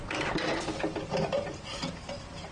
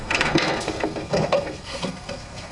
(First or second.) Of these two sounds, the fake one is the second